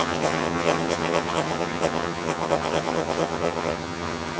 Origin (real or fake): fake